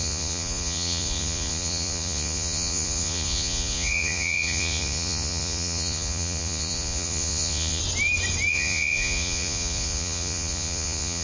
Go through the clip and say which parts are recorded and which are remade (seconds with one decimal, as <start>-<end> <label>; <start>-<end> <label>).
0.0-7.8 remade; 7.8-8.5 recorded; 8.5-11.2 remade